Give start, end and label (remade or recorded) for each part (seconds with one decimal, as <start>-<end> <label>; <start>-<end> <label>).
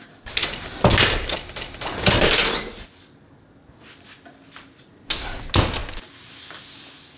0.0-7.2 recorded